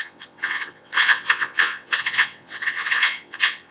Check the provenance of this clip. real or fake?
fake